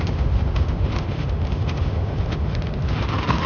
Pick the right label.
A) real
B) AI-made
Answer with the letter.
B